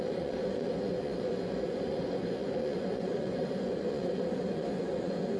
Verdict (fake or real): fake